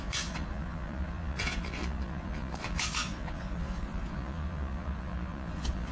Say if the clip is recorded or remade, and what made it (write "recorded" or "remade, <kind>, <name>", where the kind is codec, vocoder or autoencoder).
remade, vocoder, Vocos